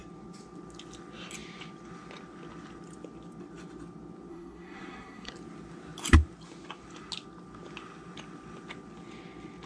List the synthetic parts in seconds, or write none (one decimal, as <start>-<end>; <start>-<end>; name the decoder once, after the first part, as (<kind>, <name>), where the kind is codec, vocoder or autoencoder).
4.3-5.3 (codec, SNAC)